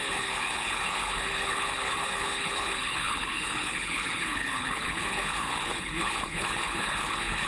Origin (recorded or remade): remade